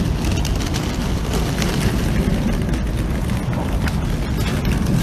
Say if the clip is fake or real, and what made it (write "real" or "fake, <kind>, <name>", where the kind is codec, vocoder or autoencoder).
real